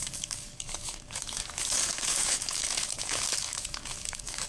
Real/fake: fake